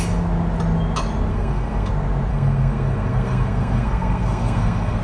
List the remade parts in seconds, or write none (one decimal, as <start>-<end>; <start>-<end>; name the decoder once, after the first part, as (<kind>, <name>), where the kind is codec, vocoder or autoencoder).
1.3-1.9 (codec, SNAC); 2.3-5.0